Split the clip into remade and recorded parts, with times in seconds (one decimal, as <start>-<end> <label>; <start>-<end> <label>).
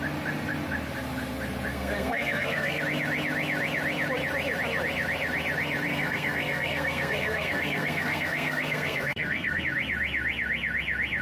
0.0-1.7 recorded; 1.7-2.8 remade; 2.8-5.9 recorded; 5.9-9.6 remade; 9.6-11.2 recorded